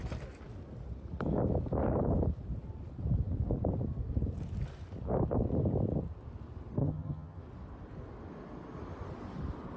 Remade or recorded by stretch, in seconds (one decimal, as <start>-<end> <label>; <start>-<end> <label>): 0.0-6.8 recorded; 6.8-7.4 remade; 7.4-9.8 recorded